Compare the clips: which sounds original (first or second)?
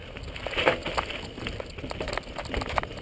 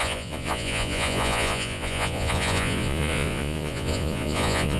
first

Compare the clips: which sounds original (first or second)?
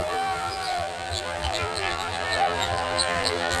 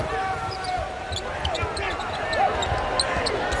second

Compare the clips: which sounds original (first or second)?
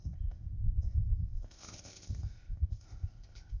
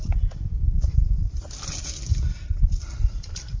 second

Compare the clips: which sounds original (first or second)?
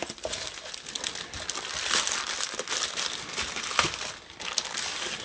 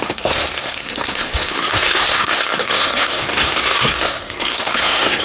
first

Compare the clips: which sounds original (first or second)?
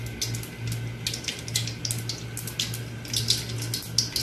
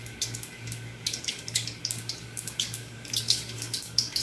first